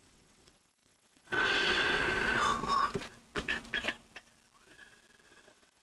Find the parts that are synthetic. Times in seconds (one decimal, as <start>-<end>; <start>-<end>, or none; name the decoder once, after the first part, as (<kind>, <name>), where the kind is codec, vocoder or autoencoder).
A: 0.0-2.0 (vocoder, WaveNeXt); 5.3-5.8